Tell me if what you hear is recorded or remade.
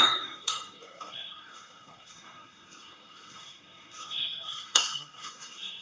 remade